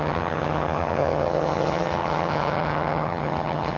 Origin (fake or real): fake